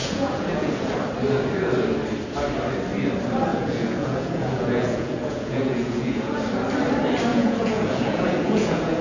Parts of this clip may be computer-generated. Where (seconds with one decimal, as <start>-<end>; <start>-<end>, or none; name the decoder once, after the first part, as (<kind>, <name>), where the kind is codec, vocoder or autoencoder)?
0.0-0.7 (vocoder, Vocos); 3.5-6.4; 7.3-9.0